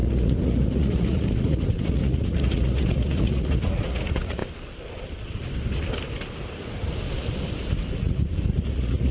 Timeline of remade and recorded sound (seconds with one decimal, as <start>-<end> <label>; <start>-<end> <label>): 0.0-4.4 remade; 4.4-7.7 recorded; 7.7-9.1 remade